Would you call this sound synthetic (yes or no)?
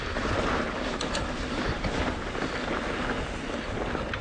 no